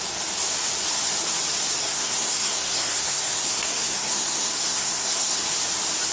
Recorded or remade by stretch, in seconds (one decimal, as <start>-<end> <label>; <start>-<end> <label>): 0.0-1.8 recorded; 1.8-5.4 remade; 5.4-6.1 recorded

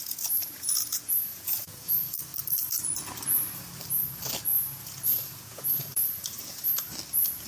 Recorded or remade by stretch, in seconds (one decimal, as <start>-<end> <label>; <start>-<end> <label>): 0.0-1.9 remade; 1.9-4.5 recorded; 4.5-6.9 remade; 6.9-7.5 recorded

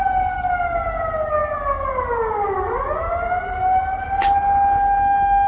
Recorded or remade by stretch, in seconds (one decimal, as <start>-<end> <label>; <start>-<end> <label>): 0.0-5.5 recorded

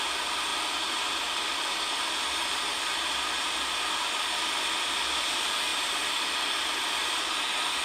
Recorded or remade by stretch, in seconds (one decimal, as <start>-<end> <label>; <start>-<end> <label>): 0.0-7.8 recorded

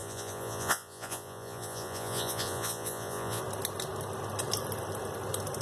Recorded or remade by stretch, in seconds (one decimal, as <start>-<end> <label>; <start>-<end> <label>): 0.0-3.4 remade; 3.4-5.6 recorded

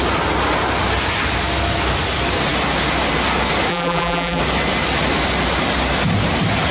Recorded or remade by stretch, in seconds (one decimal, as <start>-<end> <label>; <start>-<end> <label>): 0.0-3.7 recorded; 3.7-4.4 remade; 4.4-6.7 recorded